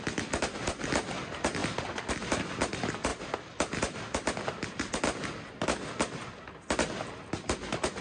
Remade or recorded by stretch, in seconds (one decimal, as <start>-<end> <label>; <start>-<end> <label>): 0.0-8.0 recorded